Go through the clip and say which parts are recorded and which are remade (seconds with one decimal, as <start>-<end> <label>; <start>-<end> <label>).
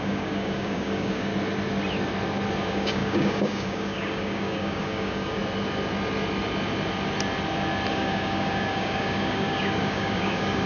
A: 0.0-1.3 remade; 1.3-2.6 recorded; 2.6-5.4 remade; 5.4-7.9 recorded; 7.9-10.7 remade